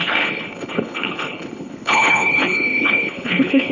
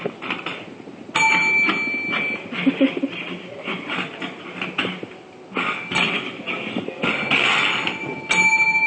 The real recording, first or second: second